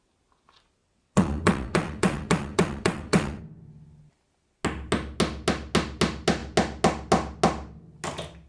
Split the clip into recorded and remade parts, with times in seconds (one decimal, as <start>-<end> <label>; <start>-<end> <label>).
0.0-0.8 recorded; 0.8-3.4 remade; 3.4-8.5 recorded